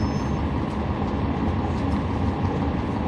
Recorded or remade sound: recorded